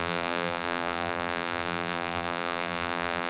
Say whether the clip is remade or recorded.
remade